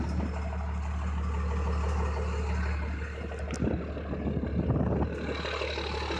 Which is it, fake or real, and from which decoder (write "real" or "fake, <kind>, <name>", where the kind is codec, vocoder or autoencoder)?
real